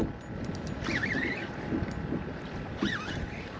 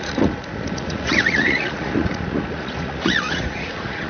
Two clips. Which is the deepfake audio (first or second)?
second